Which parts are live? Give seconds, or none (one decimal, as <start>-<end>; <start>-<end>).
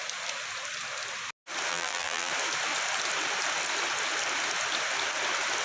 0.0-1.7; 2.3-5.6